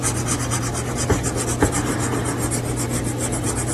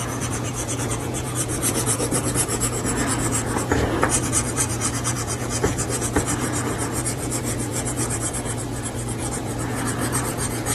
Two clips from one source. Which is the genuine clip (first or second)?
first